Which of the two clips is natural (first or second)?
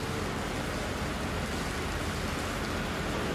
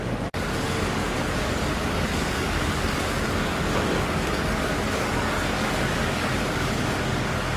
first